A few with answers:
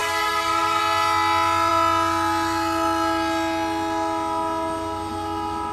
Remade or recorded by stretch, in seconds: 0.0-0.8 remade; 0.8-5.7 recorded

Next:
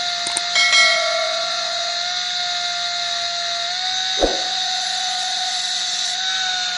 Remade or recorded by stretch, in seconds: 0.0-0.9 recorded; 0.9-1.9 remade; 1.9-4.3 recorded; 4.3-6.2 remade; 6.2-6.8 recorded

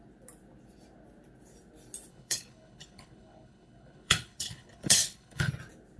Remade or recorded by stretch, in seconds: 0.0-2.1 recorded; 2.1-5.5 remade; 5.5-6.0 recorded